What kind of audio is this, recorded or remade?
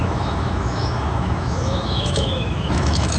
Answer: remade